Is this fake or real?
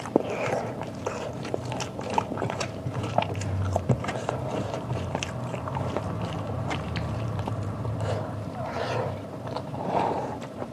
fake